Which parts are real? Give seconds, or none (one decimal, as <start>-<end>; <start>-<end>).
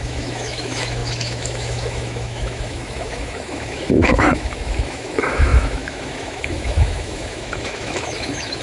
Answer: none